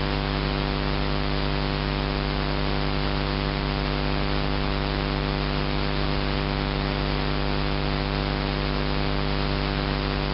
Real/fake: real